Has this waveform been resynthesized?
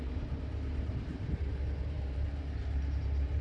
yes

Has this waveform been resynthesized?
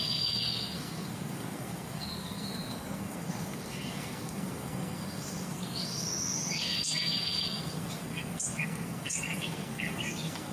yes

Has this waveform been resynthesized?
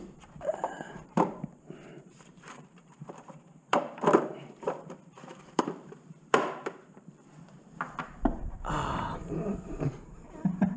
yes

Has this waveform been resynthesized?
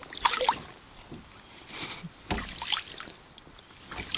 no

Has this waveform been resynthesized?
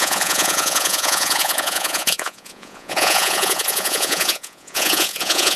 yes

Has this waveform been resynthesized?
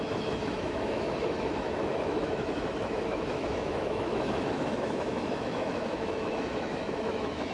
yes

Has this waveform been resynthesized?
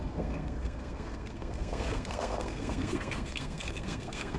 yes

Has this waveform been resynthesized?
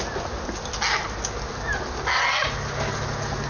no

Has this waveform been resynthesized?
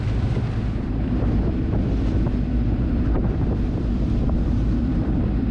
yes